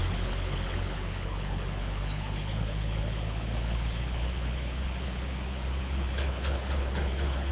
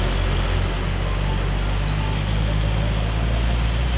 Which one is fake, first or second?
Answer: first